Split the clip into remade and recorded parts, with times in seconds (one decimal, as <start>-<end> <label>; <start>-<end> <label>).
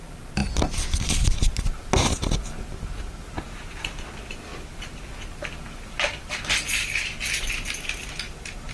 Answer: 0.0-0.4 remade; 0.4-3.8 recorded; 3.8-4.5 remade; 4.5-7.3 recorded; 7.3-8.7 remade